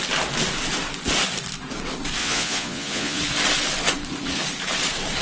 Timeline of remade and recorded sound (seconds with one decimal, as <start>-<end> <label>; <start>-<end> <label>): 0.0-2.2 recorded; 2.2-3.2 remade; 3.2-5.2 recorded